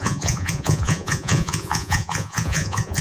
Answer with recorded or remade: remade